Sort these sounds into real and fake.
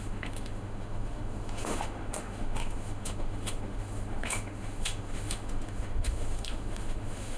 fake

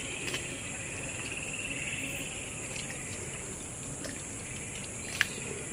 real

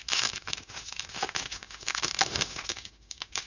fake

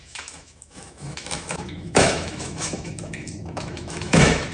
fake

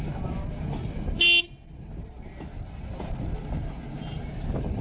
real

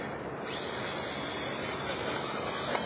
real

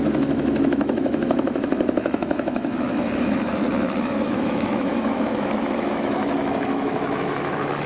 fake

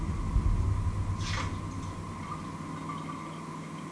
real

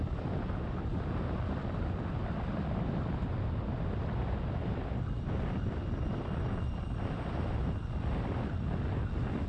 real